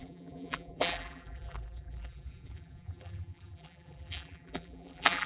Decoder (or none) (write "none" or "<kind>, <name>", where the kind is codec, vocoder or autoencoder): vocoder, BigVGAN v2